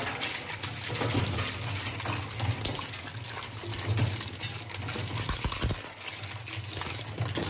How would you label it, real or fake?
real